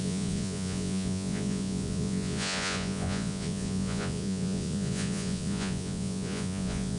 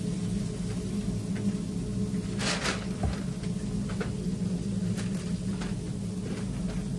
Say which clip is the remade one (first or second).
first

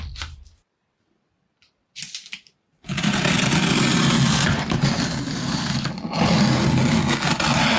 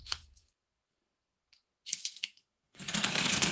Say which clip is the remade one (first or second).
second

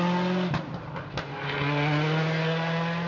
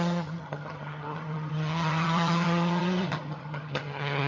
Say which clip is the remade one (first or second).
second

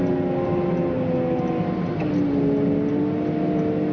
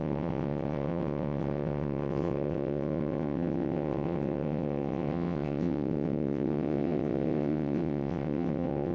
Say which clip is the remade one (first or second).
second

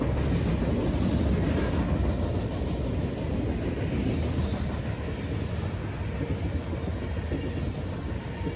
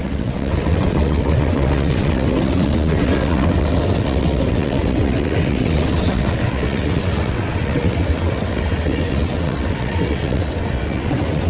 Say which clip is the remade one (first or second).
second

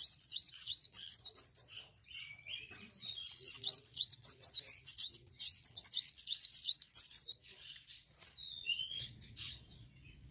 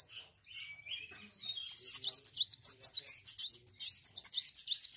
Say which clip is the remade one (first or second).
first